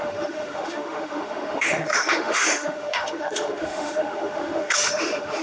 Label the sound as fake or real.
fake